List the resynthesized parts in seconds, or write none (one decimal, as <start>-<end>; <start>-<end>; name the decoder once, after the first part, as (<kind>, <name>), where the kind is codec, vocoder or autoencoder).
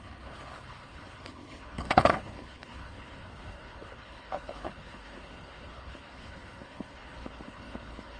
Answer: 0.0-8.2 (codec, HILCodec)